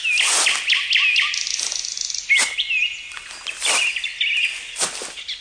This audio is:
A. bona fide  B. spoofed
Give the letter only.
A